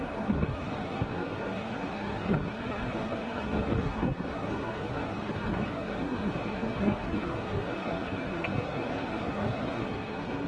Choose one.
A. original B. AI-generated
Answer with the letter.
B